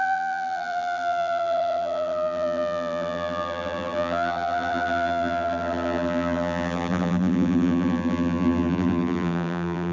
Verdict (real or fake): fake